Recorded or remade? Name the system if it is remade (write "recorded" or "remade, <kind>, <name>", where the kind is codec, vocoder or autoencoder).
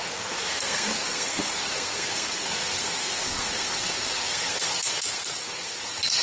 remade, codec, SNAC